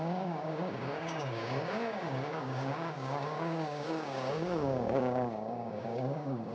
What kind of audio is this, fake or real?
fake